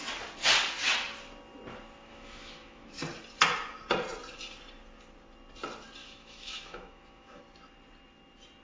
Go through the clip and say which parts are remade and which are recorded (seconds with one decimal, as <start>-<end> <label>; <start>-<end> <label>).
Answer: 0.0-2.1 recorded; 2.1-3.0 remade; 3.0-6.0 recorded; 6.0-7.4 remade; 7.4-8.6 recorded